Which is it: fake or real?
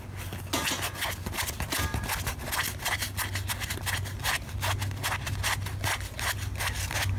real